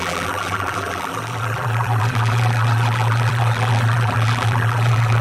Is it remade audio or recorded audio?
remade